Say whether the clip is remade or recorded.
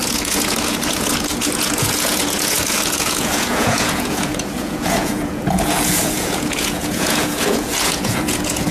remade